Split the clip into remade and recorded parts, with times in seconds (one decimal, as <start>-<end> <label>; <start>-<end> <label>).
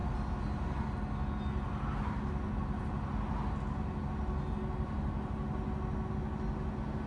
0.0-7.1 recorded